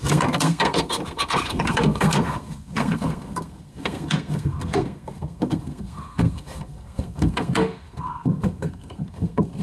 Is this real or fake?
fake